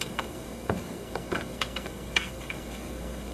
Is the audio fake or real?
fake